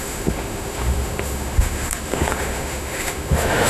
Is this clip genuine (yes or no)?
no